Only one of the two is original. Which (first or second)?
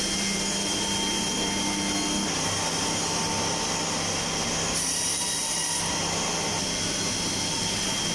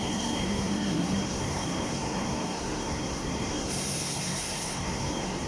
first